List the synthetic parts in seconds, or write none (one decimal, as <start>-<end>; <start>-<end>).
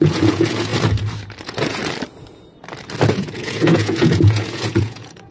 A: 0.0-0.7; 1.4-1.8; 3.1-5.3